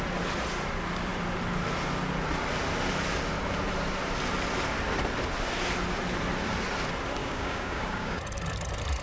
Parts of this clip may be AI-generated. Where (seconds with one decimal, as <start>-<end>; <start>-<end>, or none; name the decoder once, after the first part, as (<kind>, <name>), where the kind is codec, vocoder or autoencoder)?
7.2-8.2 (codec, DAC)